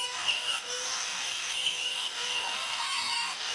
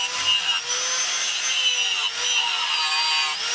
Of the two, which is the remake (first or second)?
first